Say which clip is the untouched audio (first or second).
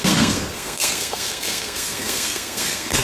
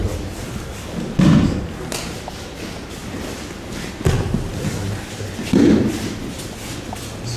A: second